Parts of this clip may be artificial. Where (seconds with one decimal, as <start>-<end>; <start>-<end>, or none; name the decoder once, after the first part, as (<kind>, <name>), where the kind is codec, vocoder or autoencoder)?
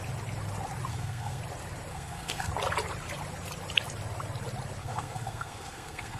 0.9-1.4 (codec, SNAC); 1.9-2.5; 4.8-6.2